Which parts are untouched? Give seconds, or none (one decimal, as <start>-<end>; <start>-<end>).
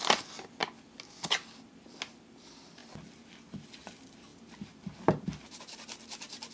0.0-6.5